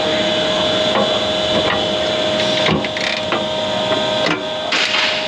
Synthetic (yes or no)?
no